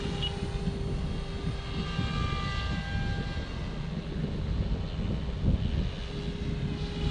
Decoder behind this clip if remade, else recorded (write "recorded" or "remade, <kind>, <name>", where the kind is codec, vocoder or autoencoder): recorded